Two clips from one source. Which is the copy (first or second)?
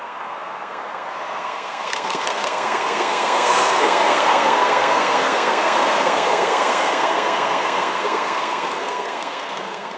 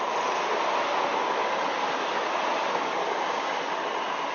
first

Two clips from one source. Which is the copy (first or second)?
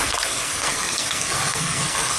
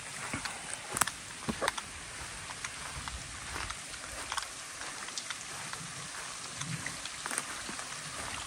first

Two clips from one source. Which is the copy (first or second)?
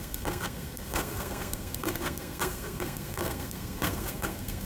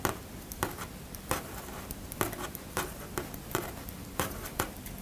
first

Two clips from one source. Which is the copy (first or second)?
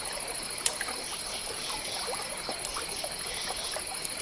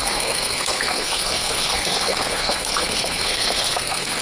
second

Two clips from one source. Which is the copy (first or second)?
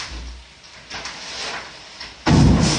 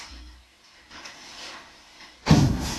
second